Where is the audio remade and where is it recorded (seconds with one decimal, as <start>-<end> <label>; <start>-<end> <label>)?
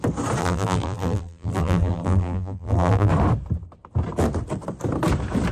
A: 0.0-0.4 recorded; 0.4-3.1 remade; 3.1-5.5 recorded